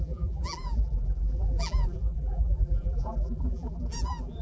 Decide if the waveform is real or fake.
fake